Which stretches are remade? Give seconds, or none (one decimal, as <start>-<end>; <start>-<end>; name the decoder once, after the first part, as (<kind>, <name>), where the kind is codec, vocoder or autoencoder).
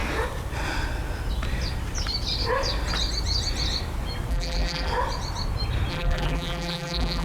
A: 4.3-4.9 (vocoder, BigVGAN v2); 5.9-7.2